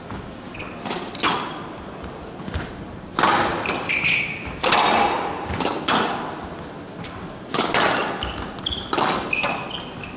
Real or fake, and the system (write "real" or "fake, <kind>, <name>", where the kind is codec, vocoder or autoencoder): real